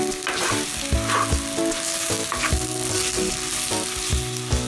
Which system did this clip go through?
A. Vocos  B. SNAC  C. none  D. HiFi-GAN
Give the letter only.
C